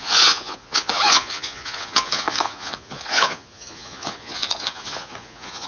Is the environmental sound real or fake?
fake